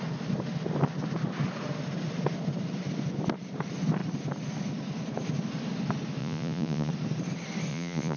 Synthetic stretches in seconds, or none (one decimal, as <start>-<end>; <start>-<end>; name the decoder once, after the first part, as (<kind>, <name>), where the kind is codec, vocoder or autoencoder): 6.2-6.9 (vocoder, Vocos); 7.7-8.2